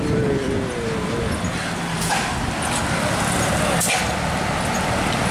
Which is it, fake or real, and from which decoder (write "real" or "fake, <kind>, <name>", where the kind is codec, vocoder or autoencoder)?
real